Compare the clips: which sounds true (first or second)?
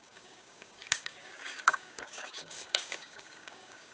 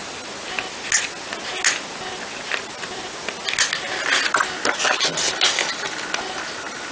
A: second